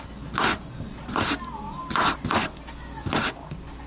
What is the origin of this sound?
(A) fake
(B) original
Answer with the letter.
B